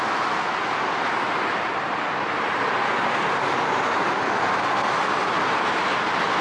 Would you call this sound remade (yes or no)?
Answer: no